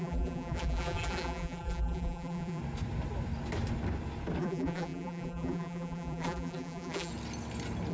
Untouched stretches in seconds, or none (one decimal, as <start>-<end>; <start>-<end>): 2.6-4.4; 7.1-7.9